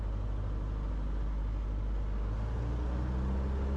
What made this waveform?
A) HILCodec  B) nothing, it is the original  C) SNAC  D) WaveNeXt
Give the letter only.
B